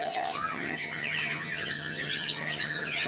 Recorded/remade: remade